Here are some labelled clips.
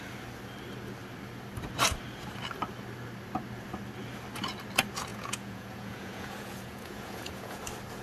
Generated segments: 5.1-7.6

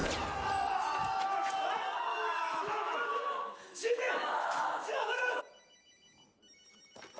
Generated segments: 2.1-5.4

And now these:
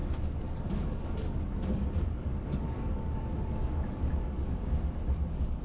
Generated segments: 0.0-5.6

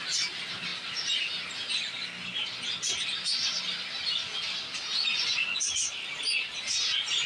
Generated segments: none

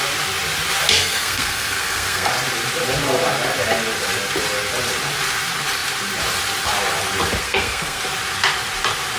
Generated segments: 1.0-2.3; 7.4-8.0